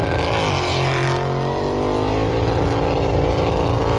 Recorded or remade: recorded